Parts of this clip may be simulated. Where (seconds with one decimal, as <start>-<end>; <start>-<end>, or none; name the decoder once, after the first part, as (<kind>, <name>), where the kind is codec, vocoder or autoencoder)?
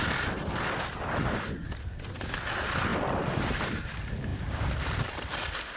2.9-3.6 (vocoder, BigVGAN v2); 4.3-5.8